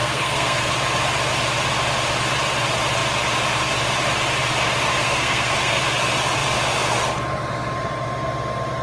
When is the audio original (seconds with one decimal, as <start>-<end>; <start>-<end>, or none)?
0.7-5.0; 5.8-8.8